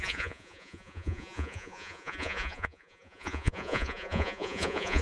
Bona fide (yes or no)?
no